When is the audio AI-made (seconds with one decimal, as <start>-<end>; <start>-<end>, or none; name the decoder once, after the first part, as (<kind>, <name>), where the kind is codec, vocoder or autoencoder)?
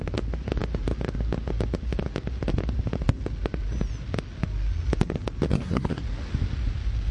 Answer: 5.5-6.0 (codec, SNAC)